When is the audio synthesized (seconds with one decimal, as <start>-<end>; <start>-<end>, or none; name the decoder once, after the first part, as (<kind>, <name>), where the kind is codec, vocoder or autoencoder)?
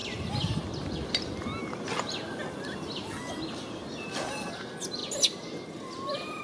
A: none